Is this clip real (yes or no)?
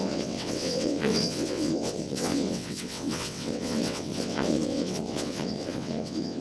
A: no